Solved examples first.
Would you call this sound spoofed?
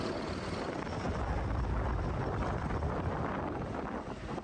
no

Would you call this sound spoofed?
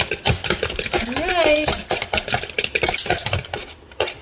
no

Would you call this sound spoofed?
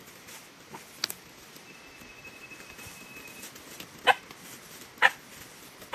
no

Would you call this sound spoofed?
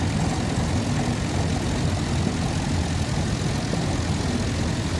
no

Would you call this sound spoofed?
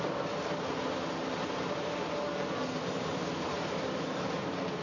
no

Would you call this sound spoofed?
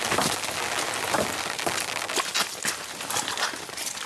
no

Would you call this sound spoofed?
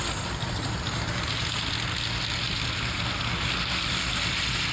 no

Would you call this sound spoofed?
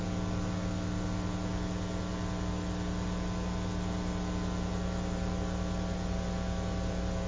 no